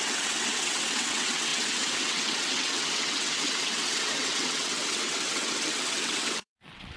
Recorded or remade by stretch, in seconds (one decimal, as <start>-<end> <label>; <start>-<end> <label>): 0.0-7.0 remade